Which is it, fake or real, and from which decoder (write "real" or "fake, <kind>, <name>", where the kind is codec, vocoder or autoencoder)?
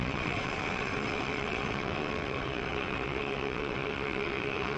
fake, vocoder, WaveNeXt